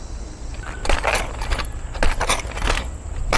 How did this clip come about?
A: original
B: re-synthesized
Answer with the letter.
A